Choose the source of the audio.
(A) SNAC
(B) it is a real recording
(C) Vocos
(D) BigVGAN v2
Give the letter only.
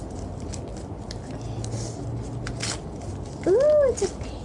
B